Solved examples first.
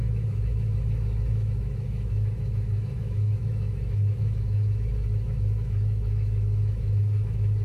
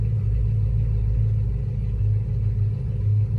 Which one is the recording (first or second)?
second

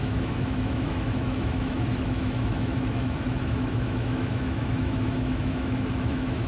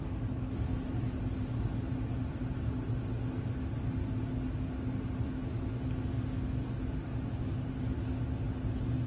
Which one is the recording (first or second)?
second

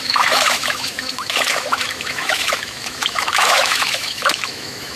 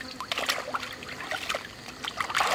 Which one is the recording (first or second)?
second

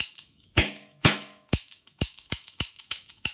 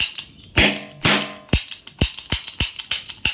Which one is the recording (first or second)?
second